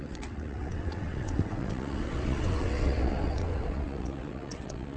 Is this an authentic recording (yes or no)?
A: no